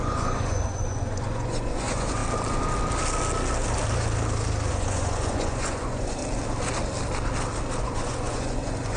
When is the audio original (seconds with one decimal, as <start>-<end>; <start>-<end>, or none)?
2.2-4.7; 6.2-7.8